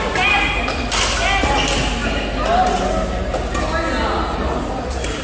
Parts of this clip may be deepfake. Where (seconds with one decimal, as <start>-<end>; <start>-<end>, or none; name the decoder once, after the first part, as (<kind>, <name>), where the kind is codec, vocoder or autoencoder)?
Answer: none